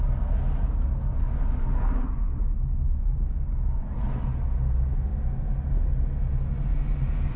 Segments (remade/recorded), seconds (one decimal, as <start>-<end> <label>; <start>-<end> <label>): 0.0-7.4 recorded